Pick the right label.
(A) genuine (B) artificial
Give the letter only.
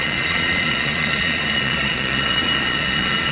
B